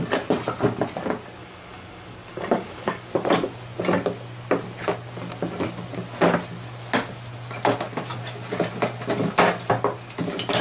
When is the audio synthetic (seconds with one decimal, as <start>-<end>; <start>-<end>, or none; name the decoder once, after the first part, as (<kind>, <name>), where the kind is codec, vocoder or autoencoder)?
1.4-3.1 (codec, DAC)